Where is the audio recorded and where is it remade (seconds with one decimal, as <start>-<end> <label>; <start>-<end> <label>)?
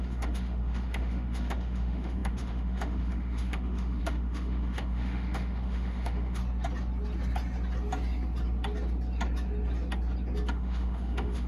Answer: 0.0-6.4 remade; 6.4-10.5 recorded; 10.5-11.5 remade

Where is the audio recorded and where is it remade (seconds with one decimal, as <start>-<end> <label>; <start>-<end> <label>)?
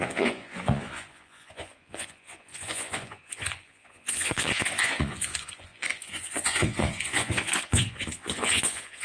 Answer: 0.0-9.0 remade